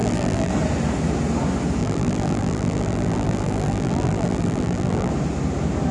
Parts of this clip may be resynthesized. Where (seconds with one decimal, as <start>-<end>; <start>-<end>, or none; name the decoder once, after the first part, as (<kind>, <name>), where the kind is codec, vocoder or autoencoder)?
0.0-0.5 (vocoder, BigVGAN v2); 1.8-5.1